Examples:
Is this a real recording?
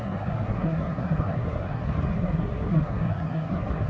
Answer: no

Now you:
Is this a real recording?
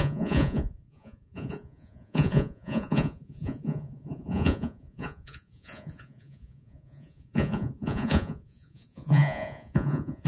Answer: no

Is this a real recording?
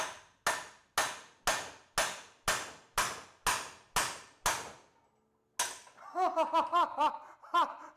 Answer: yes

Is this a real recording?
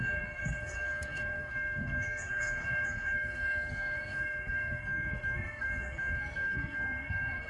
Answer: no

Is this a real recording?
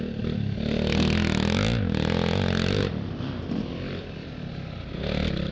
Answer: yes